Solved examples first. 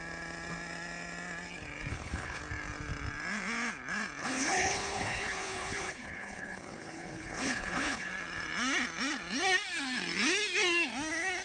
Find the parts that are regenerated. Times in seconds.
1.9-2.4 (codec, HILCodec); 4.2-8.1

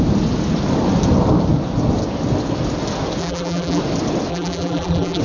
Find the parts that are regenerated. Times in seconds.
3.2-3.8 (vocoder, BigVGAN v2); 4.3-5.2

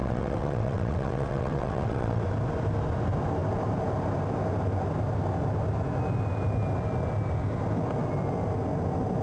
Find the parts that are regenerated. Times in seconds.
0.0-2.2 (vocoder, WaveNeXt)

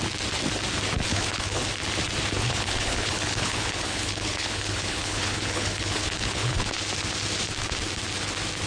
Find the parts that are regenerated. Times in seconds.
1.1-1.7 (codec, HILCodec); 2.4-6.7